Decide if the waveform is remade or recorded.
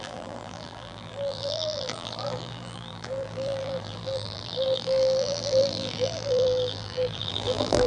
remade